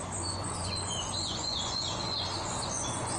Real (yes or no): no